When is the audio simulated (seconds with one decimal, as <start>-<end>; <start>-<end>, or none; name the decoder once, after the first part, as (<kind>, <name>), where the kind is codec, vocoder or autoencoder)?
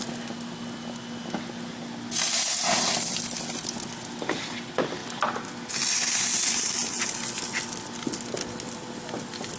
none